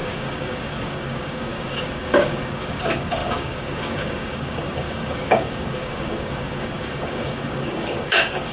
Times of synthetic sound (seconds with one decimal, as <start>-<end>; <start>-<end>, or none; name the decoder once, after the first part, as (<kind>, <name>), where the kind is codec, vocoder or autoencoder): 0.0-8.5 (codec, DAC)